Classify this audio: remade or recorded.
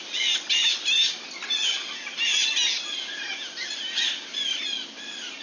recorded